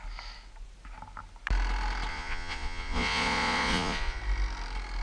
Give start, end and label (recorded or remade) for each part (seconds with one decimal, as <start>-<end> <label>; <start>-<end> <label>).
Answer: 0.0-2.1 recorded; 2.1-4.2 remade; 4.2-5.0 recorded